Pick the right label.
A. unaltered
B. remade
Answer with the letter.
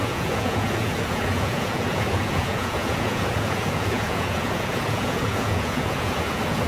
B